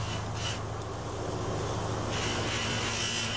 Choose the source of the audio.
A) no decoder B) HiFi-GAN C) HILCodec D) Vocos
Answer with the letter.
A